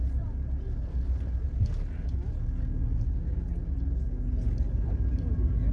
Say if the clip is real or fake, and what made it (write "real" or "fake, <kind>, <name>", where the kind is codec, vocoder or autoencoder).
real